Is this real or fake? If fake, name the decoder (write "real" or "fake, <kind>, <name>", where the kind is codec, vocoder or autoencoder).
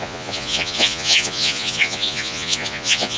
fake, vocoder, Vocos